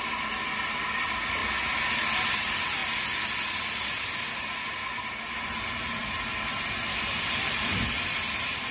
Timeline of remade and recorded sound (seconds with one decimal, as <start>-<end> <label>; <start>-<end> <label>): 0.0-8.7 recorded